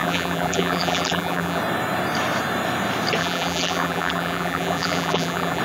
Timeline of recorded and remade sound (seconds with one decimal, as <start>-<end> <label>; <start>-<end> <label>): 0.0-1.6 remade; 1.6-3.2 recorded; 3.2-5.6 remade